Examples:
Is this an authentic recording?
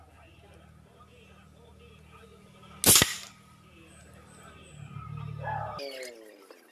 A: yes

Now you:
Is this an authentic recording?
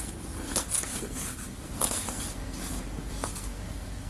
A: no